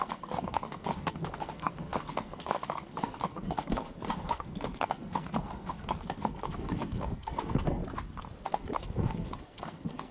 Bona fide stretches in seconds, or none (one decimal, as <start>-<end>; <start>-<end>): 7.8-8.4